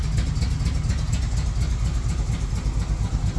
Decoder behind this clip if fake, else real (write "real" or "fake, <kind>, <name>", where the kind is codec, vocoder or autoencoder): real